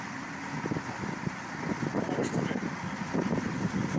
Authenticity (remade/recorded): recorded